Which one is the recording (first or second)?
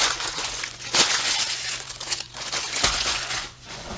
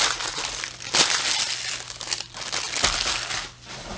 second